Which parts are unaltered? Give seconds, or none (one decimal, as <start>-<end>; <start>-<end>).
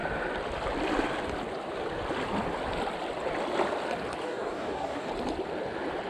0.0-4.2; 5.1-6.1